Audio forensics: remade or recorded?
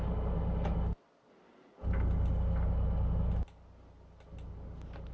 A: recorded